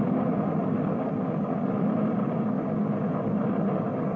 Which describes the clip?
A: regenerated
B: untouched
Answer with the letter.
B